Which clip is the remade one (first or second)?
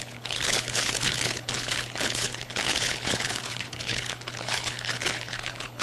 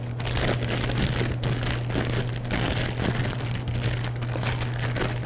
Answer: first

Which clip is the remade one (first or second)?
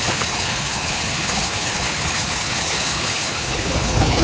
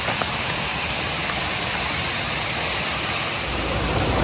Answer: first